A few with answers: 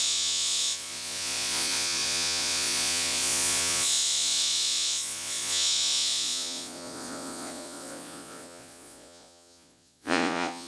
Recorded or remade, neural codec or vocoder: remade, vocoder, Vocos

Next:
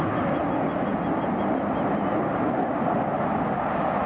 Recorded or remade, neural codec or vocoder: recorded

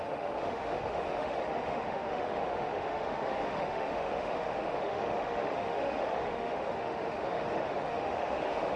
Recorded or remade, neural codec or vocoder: remade, autoencoder, DAC-VAE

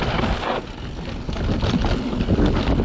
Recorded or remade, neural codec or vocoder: recorded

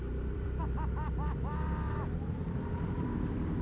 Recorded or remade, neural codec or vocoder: remade, vocoder, BigVGAN v2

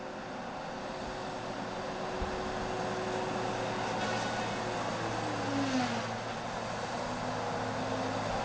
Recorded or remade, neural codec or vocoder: recorded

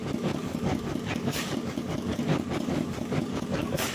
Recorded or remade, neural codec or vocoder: remade, codec, DAC